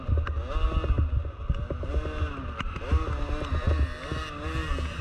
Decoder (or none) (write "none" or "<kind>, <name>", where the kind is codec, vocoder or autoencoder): none